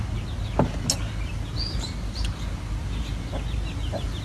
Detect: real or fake real